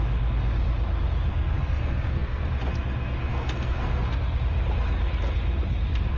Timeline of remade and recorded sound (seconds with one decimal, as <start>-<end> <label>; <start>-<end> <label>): 0.0-1.3 recorded; 1.3-2.5 remade; 2.5-3.3 recorded; 3.3-4.4 remade; 4.4-6.2 recorded